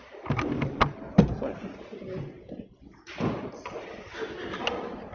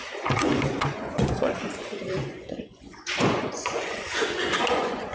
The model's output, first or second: second